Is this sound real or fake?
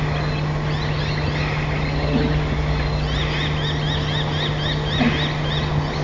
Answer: real